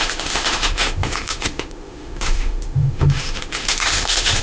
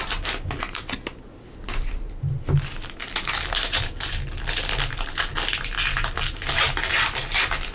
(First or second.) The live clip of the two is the second